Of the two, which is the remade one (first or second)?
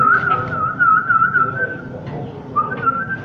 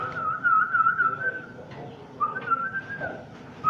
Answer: second